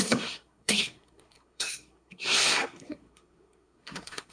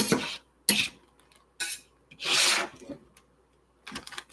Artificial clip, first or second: first